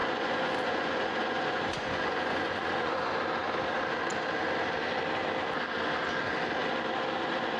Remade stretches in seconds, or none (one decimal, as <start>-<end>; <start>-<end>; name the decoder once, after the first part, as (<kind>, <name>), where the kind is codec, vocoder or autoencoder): 0.0-3.1 (vocoder, Vocos)